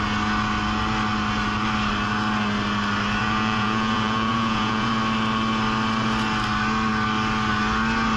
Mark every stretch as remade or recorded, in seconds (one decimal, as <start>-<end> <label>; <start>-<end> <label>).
0.0-3.2 recorded; 3.2-4.9 remade; 4.9-8.2 recorded